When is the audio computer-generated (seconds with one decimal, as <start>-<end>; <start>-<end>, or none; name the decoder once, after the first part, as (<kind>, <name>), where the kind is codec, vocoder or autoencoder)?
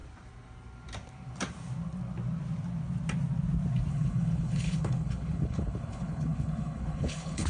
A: 3.9-7.5 (codec, HILCodec)